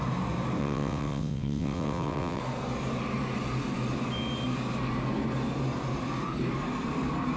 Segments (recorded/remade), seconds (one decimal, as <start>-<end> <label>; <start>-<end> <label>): 0.0-0.6 recorded; 0.6-2.4 remade; 2.4-7.4 recorded